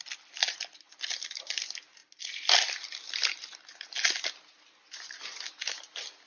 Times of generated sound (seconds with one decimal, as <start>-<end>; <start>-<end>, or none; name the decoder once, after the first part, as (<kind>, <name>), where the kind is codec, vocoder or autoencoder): none